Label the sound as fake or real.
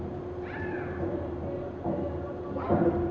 real